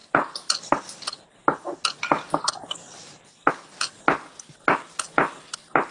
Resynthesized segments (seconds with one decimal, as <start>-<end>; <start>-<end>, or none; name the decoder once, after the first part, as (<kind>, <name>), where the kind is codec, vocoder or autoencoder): none